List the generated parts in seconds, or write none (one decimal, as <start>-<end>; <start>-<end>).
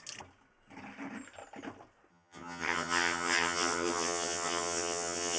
2.1-5.4